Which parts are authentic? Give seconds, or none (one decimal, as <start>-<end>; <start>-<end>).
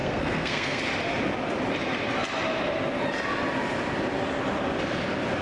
0.8-5.4